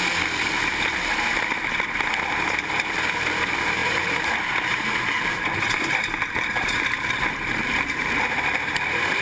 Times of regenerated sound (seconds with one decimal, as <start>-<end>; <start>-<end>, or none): 3.8-9.2